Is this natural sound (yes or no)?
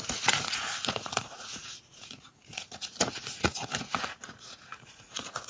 no